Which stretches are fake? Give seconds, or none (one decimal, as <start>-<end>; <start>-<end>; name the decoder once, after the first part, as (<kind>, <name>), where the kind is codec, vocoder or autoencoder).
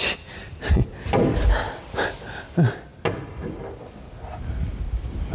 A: none